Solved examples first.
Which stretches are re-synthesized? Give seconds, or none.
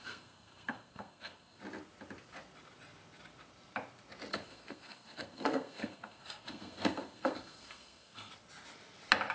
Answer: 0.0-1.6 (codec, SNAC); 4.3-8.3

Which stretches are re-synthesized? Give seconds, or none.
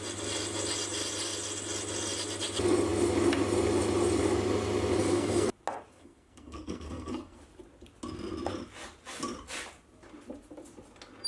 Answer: 5.0-5.5 (codec, SNAC); 5.9-7.4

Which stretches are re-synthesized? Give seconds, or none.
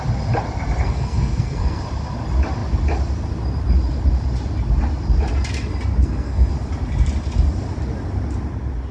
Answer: 0.8-1.8 (codec, SNAC); 6.0-6.5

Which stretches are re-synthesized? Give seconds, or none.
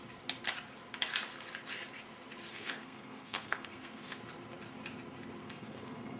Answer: 2.5-4.2 (codec, SNAC); 5.4-6.2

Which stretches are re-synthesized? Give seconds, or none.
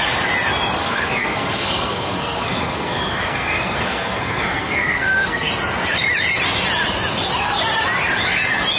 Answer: 0.8-5.5 (codec, SNAC)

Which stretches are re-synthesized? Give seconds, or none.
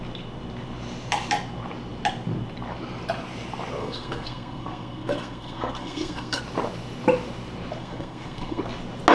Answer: 3.8-6.4 (codec, SNAC); 7.8-8.6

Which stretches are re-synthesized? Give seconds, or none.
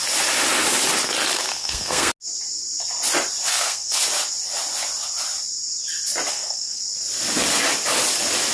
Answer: 1.5-2.1 (codec, SNAC); 3.5-4.0; 6.3-6.8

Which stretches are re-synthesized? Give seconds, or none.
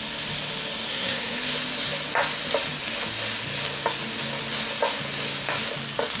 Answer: 0.9-1.4 (codec, SNAC)